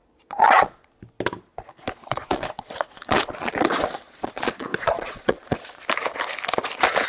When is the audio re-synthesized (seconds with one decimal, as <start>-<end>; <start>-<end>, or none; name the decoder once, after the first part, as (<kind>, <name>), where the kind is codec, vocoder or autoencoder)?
0.0-0.9 (vocoder, Vocos); 1.5-5.8